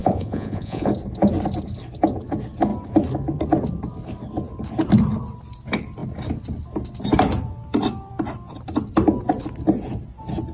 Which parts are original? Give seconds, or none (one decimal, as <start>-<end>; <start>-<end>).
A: 0.9-10.5